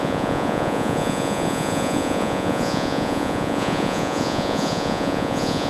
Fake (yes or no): yes